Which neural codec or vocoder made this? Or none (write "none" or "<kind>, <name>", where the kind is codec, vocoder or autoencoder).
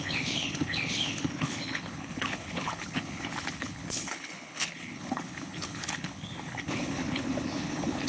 codec, HILCodec